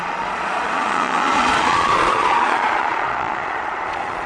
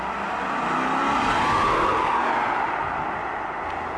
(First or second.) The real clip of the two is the second